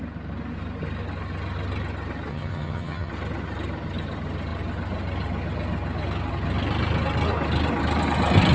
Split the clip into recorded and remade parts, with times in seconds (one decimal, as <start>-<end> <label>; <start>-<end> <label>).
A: 0.0-2.3 recorded; 2.3-3.1 remade; 3.1-8.5 recorded